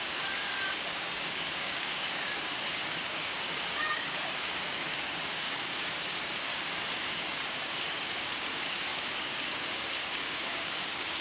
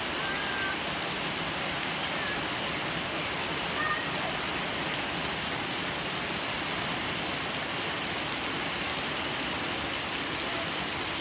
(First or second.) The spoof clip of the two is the first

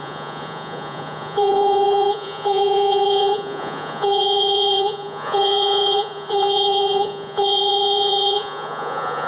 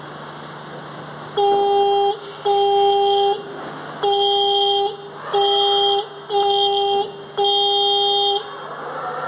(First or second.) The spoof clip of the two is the first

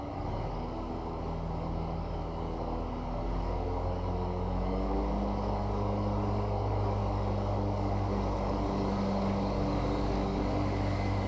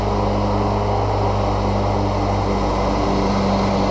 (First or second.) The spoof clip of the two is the first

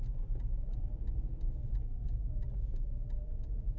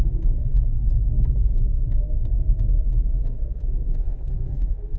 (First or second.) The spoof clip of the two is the second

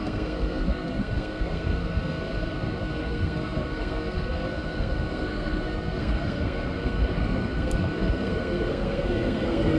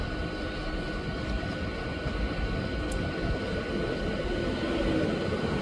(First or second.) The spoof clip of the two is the first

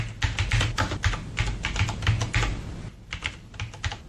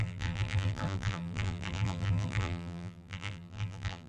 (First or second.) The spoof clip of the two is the second